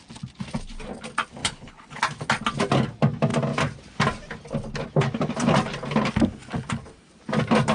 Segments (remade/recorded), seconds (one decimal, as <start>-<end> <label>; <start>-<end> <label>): 0.0-1.4 recorded; 1.4-2.0 remade; 2.0-7.7 recorded